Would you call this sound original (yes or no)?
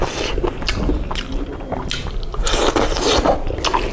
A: yes